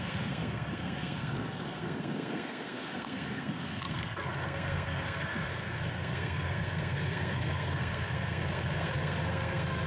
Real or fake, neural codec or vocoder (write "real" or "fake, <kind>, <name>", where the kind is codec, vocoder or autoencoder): fake, codec, SNAC